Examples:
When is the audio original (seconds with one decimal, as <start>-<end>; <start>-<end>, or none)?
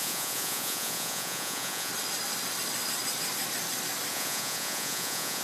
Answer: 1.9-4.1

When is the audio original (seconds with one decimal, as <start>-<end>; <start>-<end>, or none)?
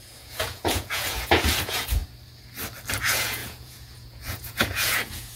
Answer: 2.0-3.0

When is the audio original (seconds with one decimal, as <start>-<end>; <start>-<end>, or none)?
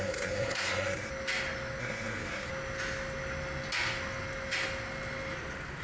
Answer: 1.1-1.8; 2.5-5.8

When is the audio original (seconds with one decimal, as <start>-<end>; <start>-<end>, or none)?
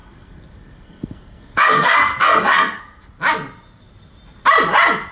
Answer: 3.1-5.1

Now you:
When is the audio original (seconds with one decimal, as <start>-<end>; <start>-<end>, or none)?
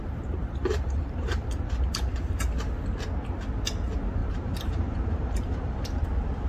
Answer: 0.0-0.4; 1.5-4.2; 5.9-6.5